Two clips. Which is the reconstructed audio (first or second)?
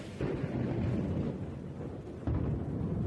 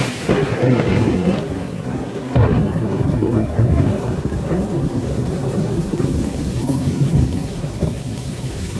second